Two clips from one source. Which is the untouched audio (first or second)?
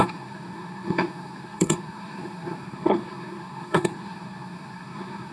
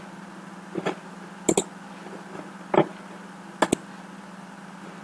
second